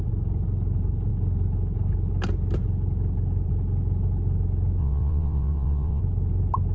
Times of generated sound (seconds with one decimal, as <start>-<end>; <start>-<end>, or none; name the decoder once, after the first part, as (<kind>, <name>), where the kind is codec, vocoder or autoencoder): 4.8-6.0 (vocoder, WaveNeXt)